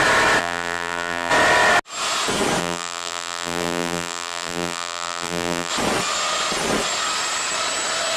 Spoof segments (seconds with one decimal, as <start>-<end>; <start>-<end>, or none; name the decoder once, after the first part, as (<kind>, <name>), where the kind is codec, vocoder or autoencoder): 0.4-1.3 (vocoder, BigVGAN v2); 2.6-5.7